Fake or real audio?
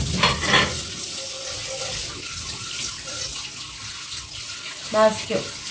real